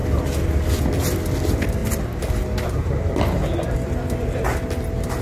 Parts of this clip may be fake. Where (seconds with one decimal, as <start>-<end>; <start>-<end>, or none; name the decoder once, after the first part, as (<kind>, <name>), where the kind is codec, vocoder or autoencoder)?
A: none